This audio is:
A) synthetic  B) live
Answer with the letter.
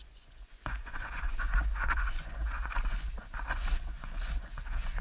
A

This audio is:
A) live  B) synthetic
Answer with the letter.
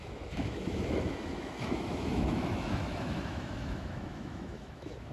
B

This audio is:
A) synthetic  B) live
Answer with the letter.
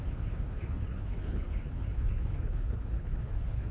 A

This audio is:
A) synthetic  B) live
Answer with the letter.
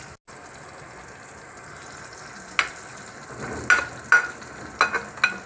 B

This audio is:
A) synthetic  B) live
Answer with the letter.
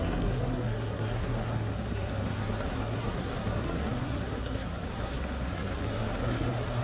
A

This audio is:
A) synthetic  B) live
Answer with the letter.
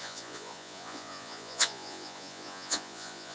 A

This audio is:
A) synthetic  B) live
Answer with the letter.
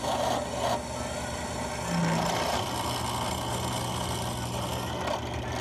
B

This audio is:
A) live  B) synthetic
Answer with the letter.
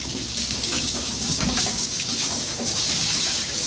B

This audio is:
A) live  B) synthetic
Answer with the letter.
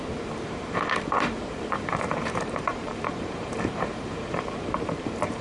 B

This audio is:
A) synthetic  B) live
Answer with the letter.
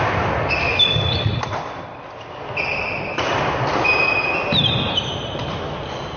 B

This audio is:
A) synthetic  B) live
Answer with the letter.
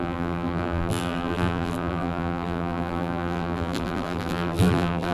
A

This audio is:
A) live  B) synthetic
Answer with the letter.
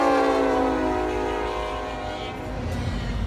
A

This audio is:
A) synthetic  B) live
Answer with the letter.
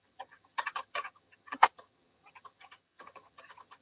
A